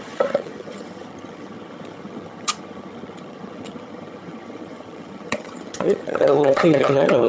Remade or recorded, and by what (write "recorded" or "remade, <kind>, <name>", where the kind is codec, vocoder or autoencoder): remade, vocoder, HiFi-GAN